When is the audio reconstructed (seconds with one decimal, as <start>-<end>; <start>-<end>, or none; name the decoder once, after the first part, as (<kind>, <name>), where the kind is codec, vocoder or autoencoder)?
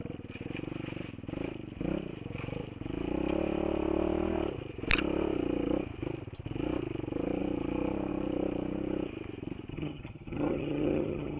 9.7-11.4 (vocoder, HiFi-GAN)